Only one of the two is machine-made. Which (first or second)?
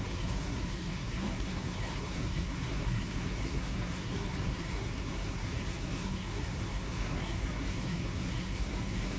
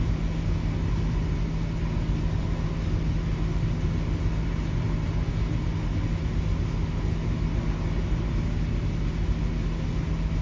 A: first